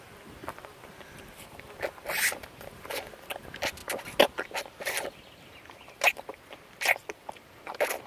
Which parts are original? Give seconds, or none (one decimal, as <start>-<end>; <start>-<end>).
3.8-4.6